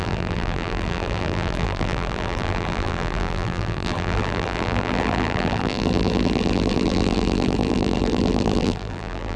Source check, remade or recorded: remade